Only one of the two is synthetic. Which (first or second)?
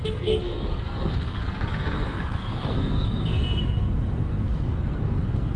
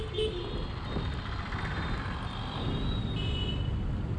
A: first